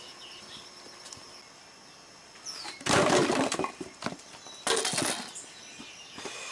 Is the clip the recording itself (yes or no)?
yes